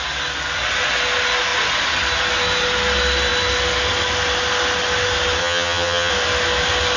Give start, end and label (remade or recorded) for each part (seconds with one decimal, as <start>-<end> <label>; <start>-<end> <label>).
0.0-5.4 recorded; 5.4-6.1 remade; 6.1-7.0 recorded